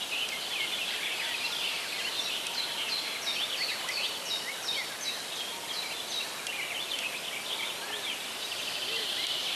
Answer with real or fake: real